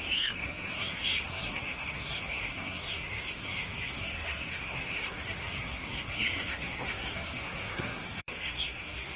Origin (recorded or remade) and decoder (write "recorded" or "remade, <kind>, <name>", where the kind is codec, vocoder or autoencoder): remade, codec, SNAC